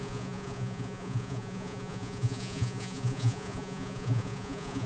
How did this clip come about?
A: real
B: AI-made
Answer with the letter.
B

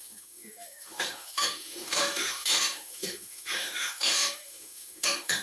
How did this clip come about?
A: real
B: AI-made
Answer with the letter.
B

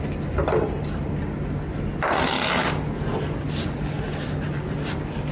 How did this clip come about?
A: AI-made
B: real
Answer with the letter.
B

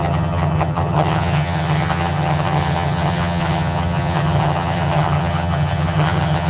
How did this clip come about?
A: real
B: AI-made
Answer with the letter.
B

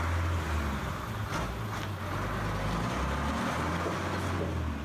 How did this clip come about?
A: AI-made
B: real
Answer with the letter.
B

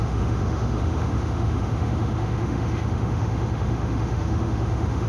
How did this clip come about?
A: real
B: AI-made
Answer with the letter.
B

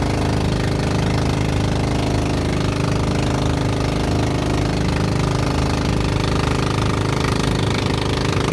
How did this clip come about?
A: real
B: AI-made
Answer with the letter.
A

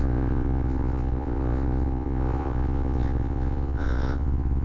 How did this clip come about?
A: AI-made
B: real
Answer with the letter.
A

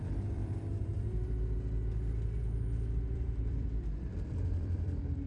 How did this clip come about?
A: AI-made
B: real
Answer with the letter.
A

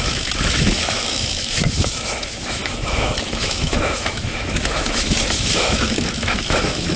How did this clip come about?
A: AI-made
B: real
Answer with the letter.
A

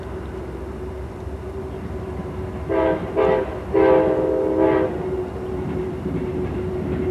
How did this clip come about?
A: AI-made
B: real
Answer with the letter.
B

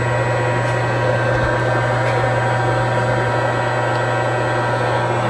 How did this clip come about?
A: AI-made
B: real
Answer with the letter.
B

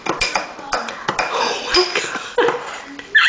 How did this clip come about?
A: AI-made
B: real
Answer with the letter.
B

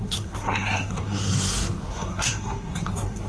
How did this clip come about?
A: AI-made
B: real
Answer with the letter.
A